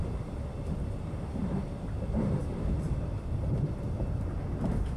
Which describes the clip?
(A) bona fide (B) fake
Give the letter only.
B